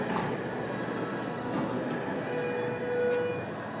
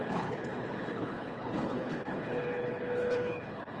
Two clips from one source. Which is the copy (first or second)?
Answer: second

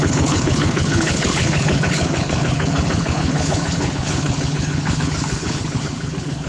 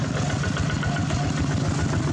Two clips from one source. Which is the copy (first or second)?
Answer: first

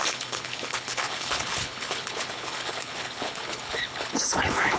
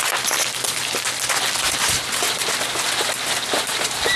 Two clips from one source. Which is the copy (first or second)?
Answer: first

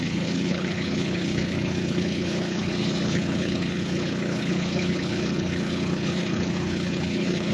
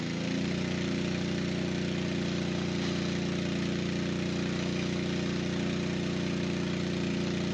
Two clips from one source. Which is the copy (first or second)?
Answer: first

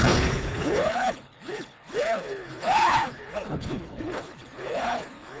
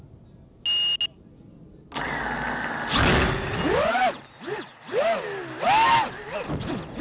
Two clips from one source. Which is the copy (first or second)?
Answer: first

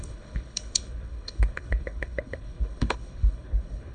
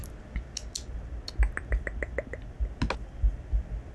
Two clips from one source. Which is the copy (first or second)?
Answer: first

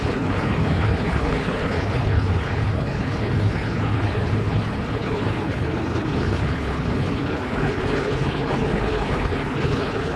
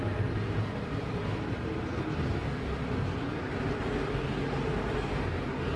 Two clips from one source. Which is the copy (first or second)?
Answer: first